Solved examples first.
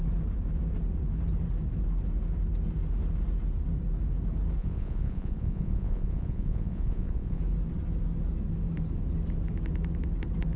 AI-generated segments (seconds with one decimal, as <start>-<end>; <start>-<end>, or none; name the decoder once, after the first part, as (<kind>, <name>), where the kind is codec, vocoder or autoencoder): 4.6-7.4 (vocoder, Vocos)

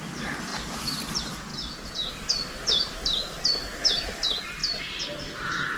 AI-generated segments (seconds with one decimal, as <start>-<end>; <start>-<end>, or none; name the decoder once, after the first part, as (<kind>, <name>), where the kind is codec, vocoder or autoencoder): 1.5-2.1 (vocoder, Vocos)

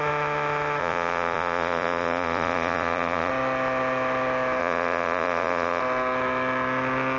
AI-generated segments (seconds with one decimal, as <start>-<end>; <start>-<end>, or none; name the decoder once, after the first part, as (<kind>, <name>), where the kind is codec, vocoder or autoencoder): 0.8-3.3 (vocoder, Vocos); 4.6-5.8

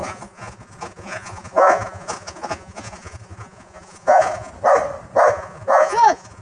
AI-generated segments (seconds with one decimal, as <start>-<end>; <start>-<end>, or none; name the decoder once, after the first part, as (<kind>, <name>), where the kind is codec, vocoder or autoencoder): 0.0-4.5 (vocoder, Vocos); 5.3-6.4